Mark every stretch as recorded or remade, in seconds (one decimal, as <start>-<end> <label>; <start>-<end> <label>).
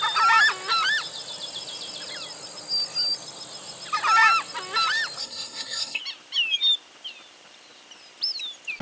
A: 0.0-5.2 recorded; 5.2-6.0 remade; 6.0-8.8 recorded